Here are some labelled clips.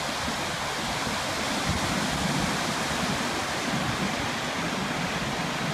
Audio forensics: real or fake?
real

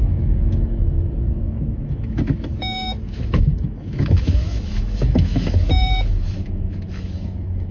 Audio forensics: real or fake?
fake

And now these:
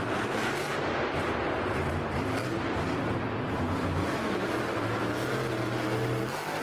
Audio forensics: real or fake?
real